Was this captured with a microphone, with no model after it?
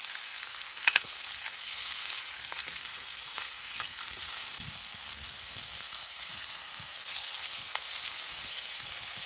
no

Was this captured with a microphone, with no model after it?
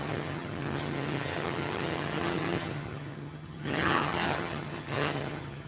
no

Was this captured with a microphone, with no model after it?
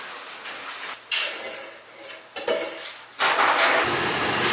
yes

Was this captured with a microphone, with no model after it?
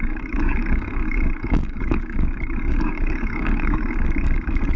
no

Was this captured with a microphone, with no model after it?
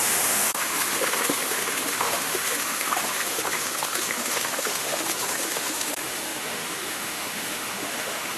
no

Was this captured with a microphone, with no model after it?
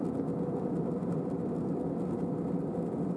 yes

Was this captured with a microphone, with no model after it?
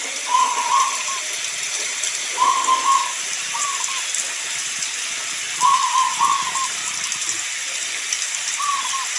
no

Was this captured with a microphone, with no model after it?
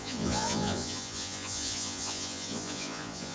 no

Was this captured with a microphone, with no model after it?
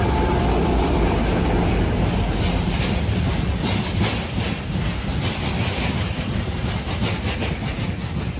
yes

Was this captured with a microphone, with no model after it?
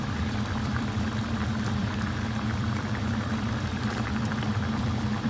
no